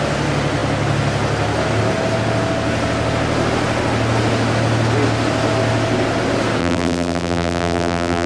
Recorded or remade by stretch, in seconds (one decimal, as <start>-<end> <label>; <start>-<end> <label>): 0.0-6.6 recorded; 6.6-8.3 remade